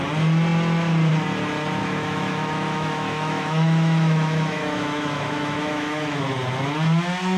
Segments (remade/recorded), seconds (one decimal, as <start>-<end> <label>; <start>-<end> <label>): 0.0-1.8 recorded; 1.8-6.2 remade; 6.2-7.4 recorded